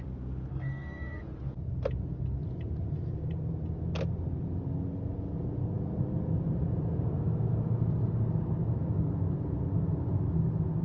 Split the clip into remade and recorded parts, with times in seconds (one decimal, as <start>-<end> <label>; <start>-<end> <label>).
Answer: 0.0-0.5 recorded; 0.5-1.2 remade; 1.2-10.8 recorded